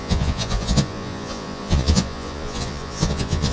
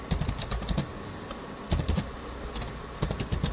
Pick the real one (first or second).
second